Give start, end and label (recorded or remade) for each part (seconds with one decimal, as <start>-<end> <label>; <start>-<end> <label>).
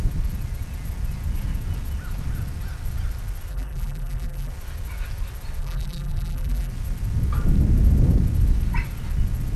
0.0-3.5 recorded; 3.5-4.5 remade; 4.5-5.6 recorded; 5.6-6.7 remade; 6.7-9.6 recorded